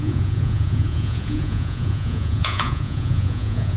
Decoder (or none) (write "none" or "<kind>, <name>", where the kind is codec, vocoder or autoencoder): vocoder, Vocos